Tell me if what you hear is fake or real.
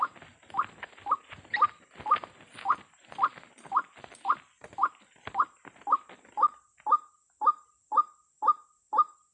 real